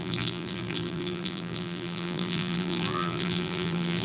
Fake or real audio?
fake